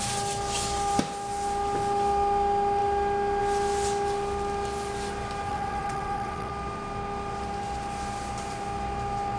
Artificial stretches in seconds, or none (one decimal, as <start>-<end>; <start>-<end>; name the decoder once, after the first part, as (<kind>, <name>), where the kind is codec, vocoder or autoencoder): 5.5-6.5 (vocoder, WaveNeXt)